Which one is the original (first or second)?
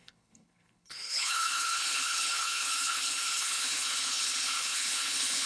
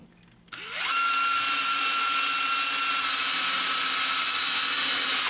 second